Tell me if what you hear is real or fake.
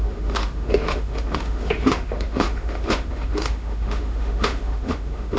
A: fake